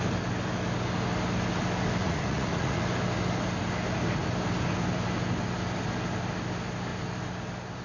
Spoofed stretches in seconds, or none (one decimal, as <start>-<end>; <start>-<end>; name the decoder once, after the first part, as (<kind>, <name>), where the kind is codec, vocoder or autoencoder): 2.0-2.8 (vocoder, Vocos)